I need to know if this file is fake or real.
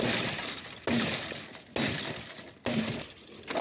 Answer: real